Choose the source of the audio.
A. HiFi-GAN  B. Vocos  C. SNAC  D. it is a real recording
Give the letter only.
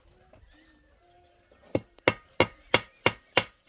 D